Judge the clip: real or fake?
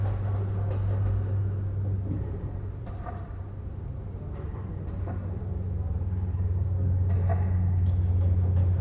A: real